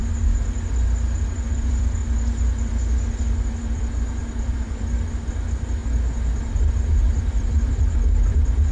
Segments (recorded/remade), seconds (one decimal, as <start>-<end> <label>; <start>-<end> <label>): 0.0-1.5 recorded; 1.5-2.0 remade; 2.0-3.6 recorded; 3.6-5.8 remade; 5.8-7.0 recorded; 7.0-8.7 remade